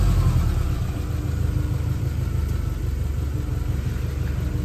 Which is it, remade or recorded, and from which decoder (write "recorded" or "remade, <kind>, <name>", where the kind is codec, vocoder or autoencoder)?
recorded